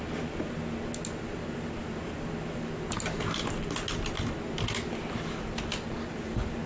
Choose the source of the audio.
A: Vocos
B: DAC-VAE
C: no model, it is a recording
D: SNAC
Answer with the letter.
C